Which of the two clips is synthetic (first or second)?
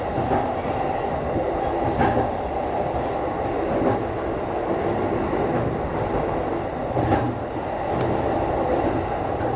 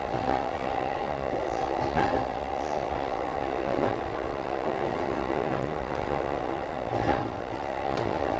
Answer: second